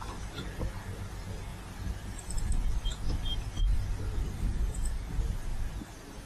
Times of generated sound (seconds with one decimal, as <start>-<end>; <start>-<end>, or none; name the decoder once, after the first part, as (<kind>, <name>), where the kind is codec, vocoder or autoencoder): 4.5-5.1 (vocoder, Vocos)